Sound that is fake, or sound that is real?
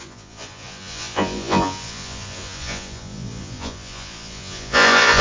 fake